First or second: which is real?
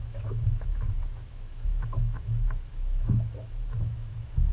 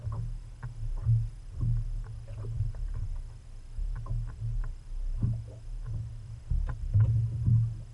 second